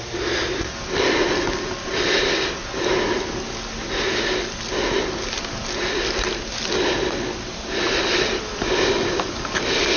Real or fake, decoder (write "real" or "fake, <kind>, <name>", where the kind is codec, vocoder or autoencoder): real